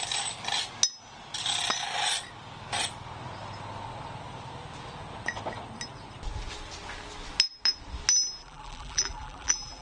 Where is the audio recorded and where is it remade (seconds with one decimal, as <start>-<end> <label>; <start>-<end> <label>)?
0.0-8.4 recorded; 8.4-9.8 remade